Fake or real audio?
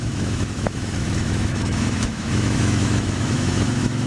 fake